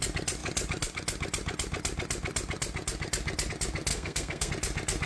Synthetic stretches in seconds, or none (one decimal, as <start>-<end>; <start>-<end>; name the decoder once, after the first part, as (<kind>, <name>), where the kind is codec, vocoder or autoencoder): 3.9-4.5 (codec, SNAC)